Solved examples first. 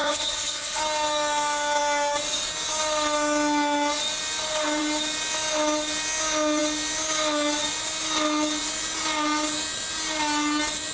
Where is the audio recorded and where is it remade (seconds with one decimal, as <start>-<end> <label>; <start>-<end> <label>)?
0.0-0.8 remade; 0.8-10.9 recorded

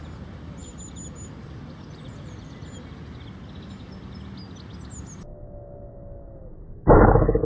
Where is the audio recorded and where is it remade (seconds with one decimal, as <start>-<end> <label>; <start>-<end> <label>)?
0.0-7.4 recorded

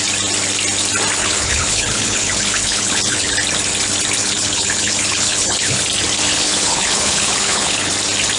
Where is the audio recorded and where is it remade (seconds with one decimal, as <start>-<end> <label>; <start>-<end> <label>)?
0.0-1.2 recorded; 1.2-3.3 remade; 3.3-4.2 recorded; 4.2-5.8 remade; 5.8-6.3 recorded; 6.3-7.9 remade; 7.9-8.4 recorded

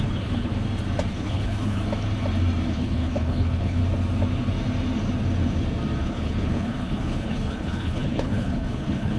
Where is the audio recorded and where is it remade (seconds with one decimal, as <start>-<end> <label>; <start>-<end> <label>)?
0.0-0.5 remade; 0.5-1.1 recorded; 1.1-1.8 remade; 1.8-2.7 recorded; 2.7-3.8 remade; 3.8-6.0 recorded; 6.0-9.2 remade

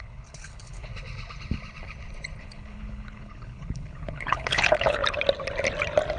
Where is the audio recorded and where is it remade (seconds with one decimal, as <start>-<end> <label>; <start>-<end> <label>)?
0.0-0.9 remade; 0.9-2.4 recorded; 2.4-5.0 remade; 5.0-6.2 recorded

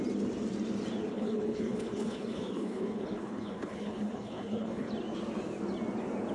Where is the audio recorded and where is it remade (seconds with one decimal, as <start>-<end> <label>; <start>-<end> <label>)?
0.0-1.1 recorded; 1.1-4.9 remade; 4.9-6.3 recorded